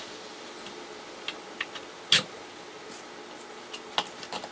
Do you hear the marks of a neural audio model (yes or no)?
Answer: no